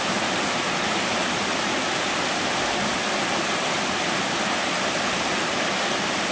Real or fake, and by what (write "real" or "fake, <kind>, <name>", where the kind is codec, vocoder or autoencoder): real